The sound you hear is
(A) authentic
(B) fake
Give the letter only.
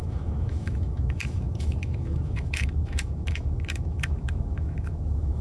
B